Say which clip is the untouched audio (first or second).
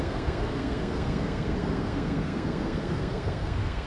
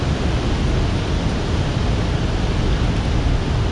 second